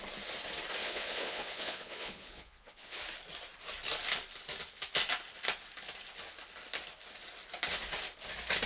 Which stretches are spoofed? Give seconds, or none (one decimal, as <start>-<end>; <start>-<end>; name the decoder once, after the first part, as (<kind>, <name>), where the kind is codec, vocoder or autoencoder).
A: 0.8-3.0 (vocoder, Vocos)